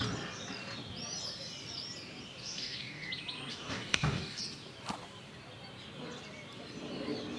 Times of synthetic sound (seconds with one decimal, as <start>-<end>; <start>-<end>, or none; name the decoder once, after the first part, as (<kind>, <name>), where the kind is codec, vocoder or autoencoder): 2.4-3.1 (codec, DAC); 3.5-4.4

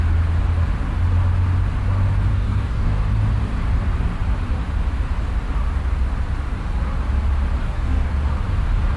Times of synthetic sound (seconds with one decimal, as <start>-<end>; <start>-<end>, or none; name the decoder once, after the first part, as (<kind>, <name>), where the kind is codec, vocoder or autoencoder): 2.3-3.1 (codec, DAC); 7.6-8.1

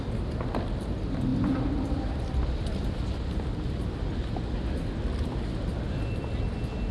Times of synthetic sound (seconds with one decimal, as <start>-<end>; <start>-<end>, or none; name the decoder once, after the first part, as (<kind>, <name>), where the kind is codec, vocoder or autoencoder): none

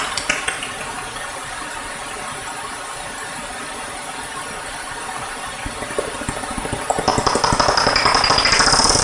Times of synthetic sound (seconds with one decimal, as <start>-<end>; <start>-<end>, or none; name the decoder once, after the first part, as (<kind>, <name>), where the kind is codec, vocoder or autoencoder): none

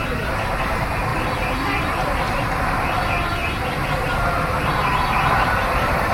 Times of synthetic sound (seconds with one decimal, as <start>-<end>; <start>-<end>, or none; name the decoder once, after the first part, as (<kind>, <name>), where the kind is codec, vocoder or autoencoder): none

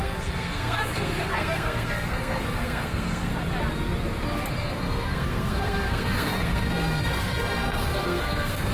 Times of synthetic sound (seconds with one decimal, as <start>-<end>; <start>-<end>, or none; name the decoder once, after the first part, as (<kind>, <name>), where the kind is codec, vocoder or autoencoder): 0.0-3.3 (codec, SNAC); 4.5-8.7

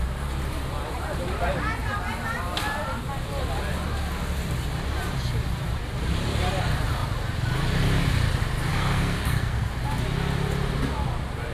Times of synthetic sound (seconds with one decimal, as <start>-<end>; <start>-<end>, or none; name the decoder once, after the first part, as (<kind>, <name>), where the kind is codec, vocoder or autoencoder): 8.7-9.7 (codec, SNAC)

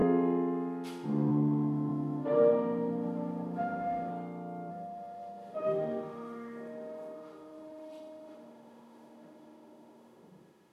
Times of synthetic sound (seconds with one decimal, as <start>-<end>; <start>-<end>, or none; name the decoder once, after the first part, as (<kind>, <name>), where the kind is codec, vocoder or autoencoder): 1.3-4.1 (autoencoder, DAC-VAE); 4.7-10.7